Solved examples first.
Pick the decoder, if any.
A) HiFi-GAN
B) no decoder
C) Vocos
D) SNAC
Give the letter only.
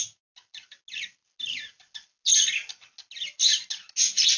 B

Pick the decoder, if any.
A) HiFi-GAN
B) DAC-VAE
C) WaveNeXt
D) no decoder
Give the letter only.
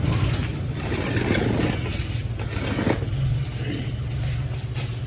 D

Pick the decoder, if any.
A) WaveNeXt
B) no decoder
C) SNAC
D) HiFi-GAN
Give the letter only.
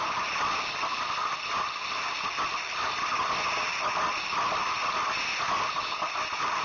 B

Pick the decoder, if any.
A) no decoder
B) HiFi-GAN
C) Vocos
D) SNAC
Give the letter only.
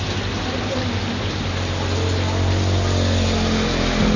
A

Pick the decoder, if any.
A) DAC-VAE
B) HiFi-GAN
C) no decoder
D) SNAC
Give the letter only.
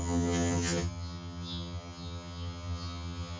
B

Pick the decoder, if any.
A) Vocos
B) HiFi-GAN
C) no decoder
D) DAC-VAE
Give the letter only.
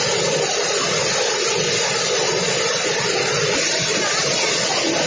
C